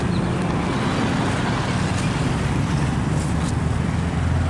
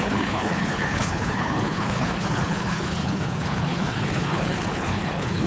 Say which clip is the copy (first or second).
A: second